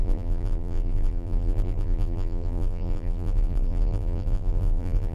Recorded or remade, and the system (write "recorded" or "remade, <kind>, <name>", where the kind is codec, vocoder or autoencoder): remade, vocoder, BigVGAN v2